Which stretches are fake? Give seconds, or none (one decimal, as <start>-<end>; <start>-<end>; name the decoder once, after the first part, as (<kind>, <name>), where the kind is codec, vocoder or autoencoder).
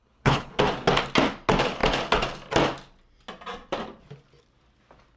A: 0.0-0.6 (codec, HILCodec)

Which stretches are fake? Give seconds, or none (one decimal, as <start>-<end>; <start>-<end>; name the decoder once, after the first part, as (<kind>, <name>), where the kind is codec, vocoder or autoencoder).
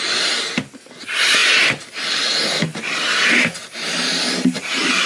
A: none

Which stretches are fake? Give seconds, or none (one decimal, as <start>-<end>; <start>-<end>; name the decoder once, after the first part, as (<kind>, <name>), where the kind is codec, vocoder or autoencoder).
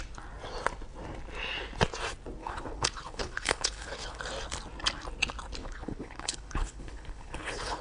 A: 2.4-4.2 (codec, HILCodec); 5.6-7.8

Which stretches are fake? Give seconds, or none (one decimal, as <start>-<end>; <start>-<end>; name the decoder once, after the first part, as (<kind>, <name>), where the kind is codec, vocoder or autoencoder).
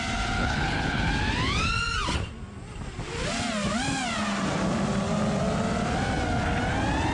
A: 0.4-1.1 (codec, HILCodec)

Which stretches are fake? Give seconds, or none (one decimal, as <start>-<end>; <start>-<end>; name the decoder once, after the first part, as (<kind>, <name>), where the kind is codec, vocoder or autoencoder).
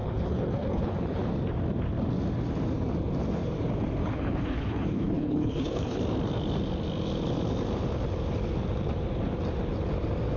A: 0.0-1.2 (codec, HILCodec); 4.0-6.0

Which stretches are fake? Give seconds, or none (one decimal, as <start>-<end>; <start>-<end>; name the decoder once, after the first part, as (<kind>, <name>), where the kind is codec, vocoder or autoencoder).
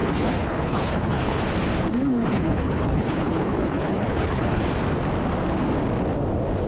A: 0.0-1.4 (codec, HILCodec); 2.3-4.6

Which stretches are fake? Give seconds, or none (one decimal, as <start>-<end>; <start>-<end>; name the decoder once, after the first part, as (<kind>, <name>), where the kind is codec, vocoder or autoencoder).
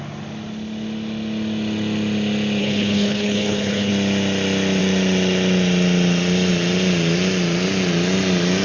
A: 2.6-3.9 (codec, HILCodec)